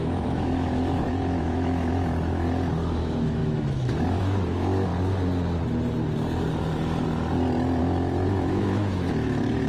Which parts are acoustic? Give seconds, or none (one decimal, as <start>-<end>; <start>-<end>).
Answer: 4.9-7.8